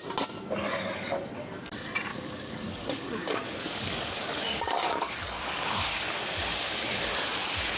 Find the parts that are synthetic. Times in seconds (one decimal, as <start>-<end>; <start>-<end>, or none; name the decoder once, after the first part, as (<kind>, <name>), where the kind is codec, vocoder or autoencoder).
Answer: 2.1-5.7 (codec, DAC)